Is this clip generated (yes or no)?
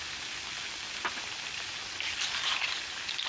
no